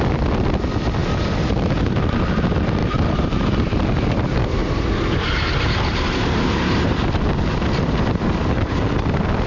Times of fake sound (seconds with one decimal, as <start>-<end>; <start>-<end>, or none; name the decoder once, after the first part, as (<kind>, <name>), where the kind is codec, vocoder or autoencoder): 2.8-3.5 (vocoder, BigVGAN v2); 4.6-7.1